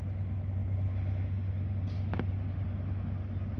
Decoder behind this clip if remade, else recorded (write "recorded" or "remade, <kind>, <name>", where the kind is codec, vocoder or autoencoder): recorded